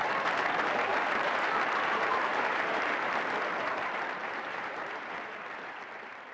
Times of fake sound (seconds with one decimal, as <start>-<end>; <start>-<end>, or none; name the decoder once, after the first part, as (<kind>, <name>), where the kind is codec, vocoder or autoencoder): 0.9-3.2 (vocoder, BigVGAN v2); 4.2-5.1